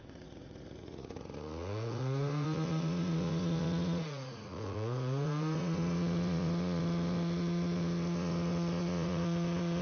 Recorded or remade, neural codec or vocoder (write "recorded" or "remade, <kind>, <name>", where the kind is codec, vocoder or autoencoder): remade, vocoder, Vocos